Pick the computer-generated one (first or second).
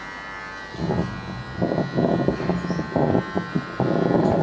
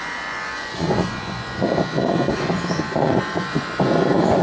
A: second